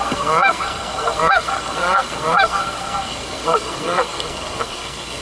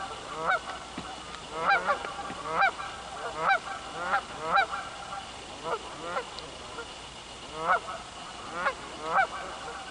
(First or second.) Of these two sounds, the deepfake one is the first